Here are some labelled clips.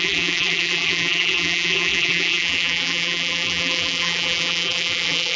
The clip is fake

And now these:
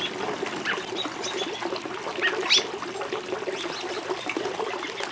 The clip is real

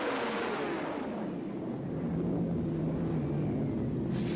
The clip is real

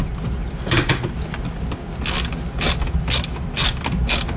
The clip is real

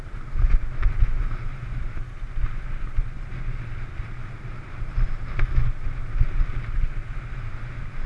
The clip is real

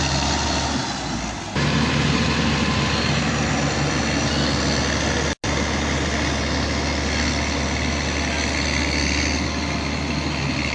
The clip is real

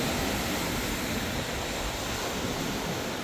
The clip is real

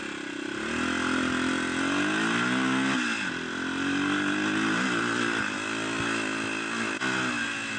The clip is real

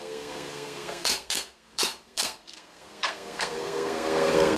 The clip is fake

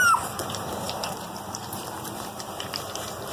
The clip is fake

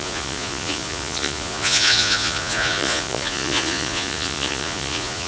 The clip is fake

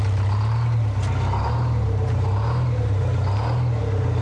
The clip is real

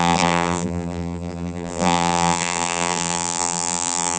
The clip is fake